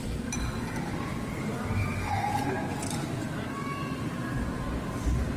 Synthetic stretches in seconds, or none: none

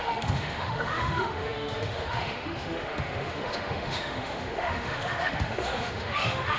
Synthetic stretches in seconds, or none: 0.0-6.6 (autoencoder, DAC-VAE)

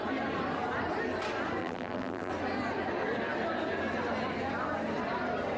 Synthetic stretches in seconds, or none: 1.6-2.3 (vocoder, BigVGAN v2)

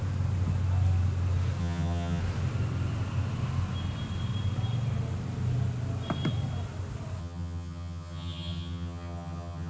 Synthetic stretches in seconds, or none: 1.6-2.2 (vocoder, HiFi-GAN); 7.2-9.7

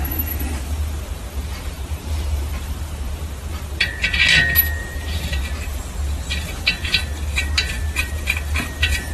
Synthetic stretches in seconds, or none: 0.0-3.9 (vocoder, BigVGAN v2); 4.8-5.8; 8.0-9.1

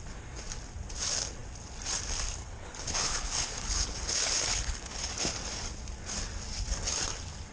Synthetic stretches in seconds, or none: 2.4-5.1 (codec, HILCodec)

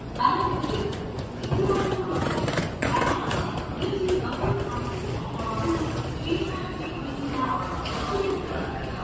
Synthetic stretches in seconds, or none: 0.0-3.2 (vocoder, Vocos); 8.3-9.0